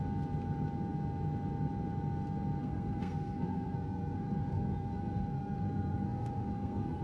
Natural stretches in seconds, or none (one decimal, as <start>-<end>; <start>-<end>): 0.0-2.6